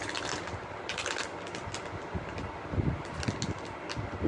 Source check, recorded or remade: recorded